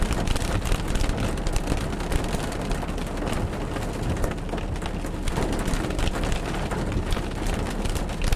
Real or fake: real